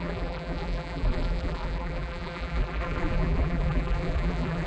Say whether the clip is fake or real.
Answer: fake